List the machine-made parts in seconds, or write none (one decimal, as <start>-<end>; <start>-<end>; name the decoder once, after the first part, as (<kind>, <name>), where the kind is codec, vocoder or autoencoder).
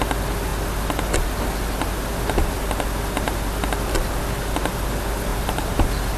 5.3-6.2 (vocoder, BigVGAN v2)